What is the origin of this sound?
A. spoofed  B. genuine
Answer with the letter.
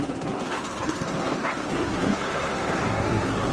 A